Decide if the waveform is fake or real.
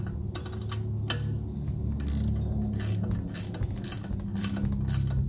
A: real